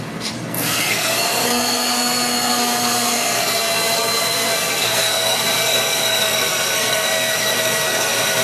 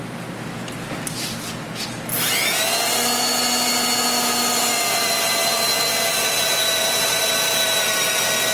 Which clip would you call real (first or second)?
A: second